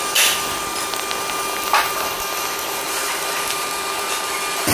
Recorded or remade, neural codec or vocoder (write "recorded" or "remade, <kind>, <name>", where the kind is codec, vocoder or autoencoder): recorded